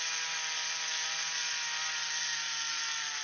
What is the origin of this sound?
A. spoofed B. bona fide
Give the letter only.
B